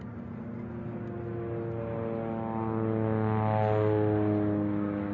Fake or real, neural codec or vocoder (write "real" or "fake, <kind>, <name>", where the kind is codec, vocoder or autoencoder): real